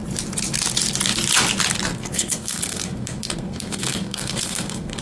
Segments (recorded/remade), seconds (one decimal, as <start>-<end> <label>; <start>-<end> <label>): 0.0-1.9 recorded; 1.9-5.0 remade